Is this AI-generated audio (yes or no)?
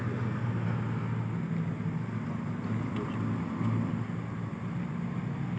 no